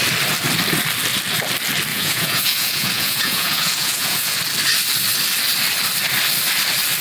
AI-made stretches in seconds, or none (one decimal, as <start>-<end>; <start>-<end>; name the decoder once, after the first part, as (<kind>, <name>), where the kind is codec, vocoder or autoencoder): 1.9-4.4 (vocoder, Vocos)